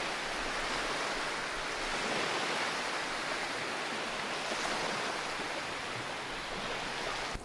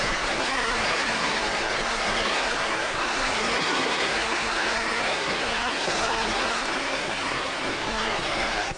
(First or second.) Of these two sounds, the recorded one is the first